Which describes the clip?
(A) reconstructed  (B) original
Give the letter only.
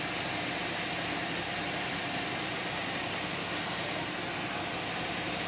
B